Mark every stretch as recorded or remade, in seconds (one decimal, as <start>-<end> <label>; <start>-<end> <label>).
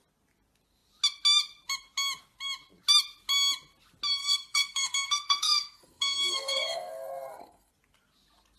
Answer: 0.0-4.2 recorded; 4.2-7.7 remade; 7.7-8.6 recorded